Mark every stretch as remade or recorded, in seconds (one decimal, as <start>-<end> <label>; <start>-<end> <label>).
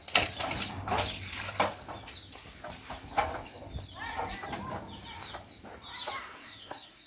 0.0-6.2 recorded; 6.2-7.1 remade